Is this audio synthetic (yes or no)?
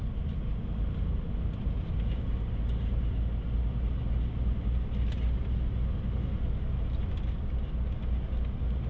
no